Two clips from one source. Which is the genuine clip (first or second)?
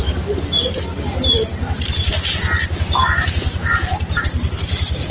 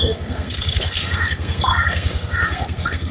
first